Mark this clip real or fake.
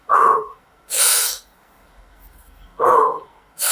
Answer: fake